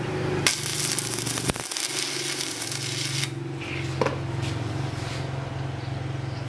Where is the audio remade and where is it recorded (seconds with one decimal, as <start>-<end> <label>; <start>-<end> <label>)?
0.0-6.5 recorded